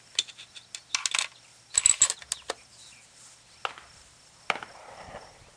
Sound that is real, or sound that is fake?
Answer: real